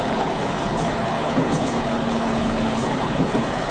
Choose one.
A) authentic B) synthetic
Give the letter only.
B